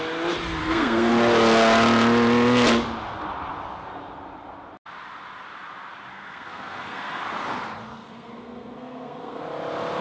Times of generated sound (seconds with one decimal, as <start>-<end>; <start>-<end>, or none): 0.6-1.1; 6.1-7.2; 7.9-9.4